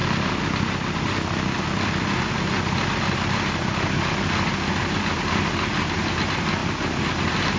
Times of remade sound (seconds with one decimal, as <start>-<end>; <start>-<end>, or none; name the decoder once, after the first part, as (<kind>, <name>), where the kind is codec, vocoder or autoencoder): none